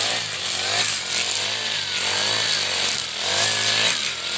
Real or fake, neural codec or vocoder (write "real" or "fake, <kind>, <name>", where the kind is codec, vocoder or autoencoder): real